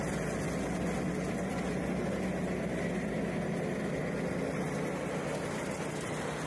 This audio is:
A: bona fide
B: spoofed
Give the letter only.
A